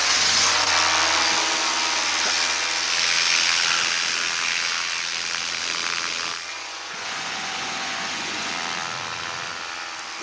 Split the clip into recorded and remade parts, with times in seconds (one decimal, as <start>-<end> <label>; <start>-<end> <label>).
0.0-0.7 remade; 0.7-6.5 recorded; 6.5-8.5 remade; 8.5-10.2 recorded